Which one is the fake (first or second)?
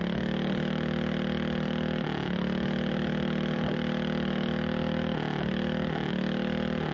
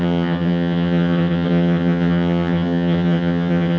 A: second